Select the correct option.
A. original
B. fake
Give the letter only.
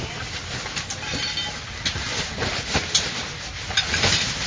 A